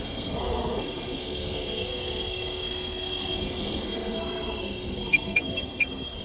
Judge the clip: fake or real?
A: fake